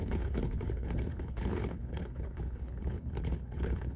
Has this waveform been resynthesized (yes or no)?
yes